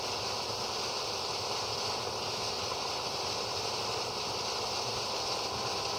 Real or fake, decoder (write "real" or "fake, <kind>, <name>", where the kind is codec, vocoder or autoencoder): real